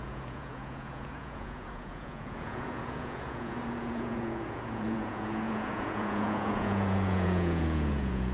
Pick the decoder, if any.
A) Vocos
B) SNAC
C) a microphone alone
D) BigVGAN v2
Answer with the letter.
A